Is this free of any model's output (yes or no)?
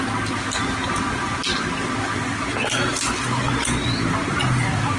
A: yes